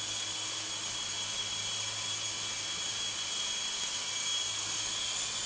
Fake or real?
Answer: real